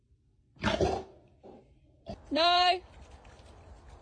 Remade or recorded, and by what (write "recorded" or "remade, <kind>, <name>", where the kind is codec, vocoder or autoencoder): remade, vocoder, BigVGAN v2